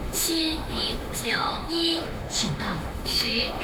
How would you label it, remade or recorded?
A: remade